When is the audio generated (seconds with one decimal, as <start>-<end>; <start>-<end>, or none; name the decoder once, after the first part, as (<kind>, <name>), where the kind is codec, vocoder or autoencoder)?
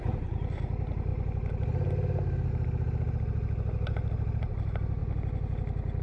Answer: none